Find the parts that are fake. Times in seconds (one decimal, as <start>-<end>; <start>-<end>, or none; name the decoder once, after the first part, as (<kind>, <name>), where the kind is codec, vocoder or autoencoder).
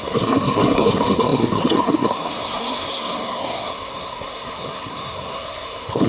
0.0-6.1 (codec, SNAC)